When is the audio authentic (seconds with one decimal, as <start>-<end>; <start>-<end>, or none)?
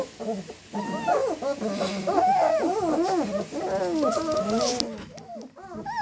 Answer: 0.0-6.0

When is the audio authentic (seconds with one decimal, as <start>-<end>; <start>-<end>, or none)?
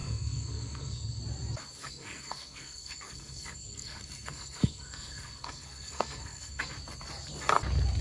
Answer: 1.2-1.8; 6.6-8.0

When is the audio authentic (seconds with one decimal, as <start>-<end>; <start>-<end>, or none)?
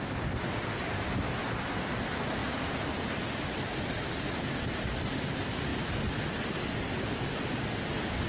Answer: 0.0-2.4; 3.1-8.3